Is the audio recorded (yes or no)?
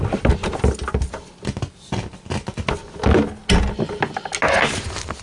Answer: yes